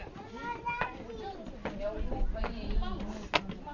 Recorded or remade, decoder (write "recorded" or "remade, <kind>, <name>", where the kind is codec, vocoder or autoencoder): recorded